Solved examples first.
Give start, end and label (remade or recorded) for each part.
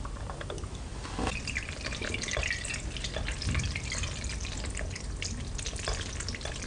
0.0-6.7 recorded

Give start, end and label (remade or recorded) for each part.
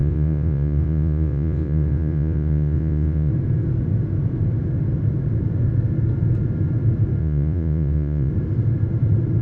0.0-3.3 remade; 3.3-7.2 recorded; 7.2-8.3 remade; 8.3-9.4 recorded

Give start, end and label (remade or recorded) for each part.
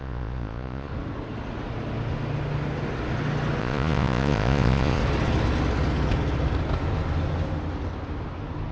0.0-0.9 remade; 0.9-3.6 recorded; 3.6-5.0 remade; 5.0-8.7 recorded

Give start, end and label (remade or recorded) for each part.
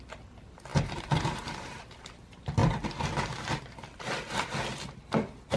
0.0-2.6 remade; 2.6-5.6 recorded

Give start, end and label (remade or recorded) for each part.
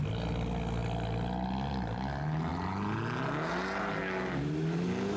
0.0-5.2 recorded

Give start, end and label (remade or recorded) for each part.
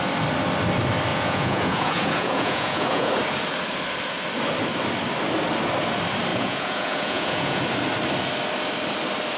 0.0-1.1 recorded; 1.1-3.1 remade; 3.1-6.3 recorded; 6.3-7.6 remade; 7.6-9.4 recorded